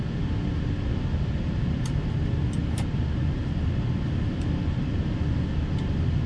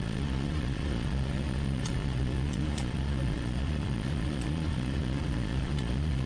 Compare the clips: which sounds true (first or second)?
first